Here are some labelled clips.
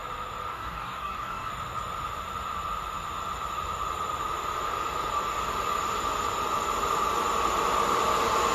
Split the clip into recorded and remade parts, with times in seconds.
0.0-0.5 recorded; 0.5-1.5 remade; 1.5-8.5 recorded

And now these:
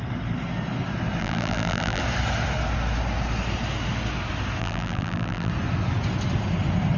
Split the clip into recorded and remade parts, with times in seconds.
0.0-1.2 recorded; 1.2-2.0 remade; 2.0-4.6 recorded; 4.6-5.5 remade; 5.5-7.0 recorded